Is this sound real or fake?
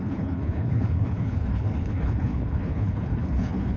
fake